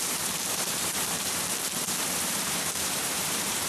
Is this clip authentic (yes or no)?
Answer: no